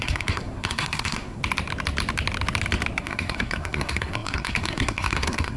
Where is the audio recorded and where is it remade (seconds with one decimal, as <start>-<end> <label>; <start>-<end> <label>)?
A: 0.0-1.4 remade; 1.4-3.0 recorded; 3.0-5.6 remade